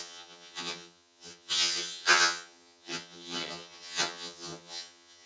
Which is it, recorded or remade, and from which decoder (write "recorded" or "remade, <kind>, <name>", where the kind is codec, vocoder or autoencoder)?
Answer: remade, vocoder, HiFi-GAN